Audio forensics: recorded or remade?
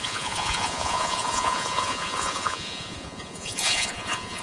remade